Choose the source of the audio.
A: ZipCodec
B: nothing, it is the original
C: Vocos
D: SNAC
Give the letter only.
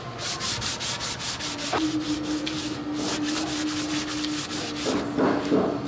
B